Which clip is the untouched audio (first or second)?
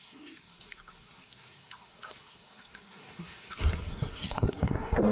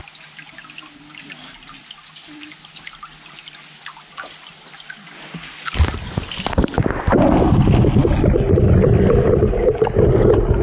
second